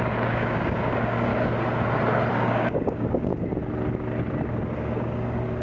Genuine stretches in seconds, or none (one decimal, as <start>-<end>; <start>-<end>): 1.3-2.3; 3.3-4.6